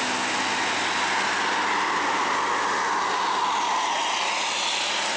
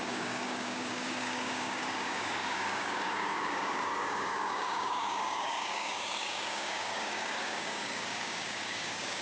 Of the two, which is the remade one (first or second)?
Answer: second